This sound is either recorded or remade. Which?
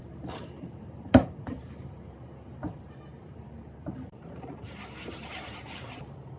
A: remade